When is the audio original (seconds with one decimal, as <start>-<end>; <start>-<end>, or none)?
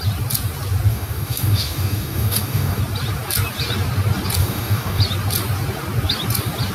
0.0-0.9; 2.8-4.4; 5.0-6.7